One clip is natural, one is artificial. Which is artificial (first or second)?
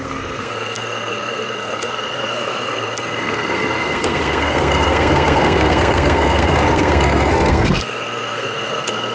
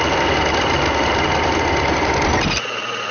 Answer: first